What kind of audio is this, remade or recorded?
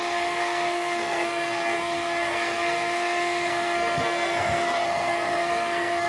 remade